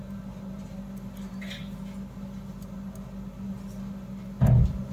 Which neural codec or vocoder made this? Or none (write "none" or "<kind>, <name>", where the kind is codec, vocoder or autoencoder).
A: none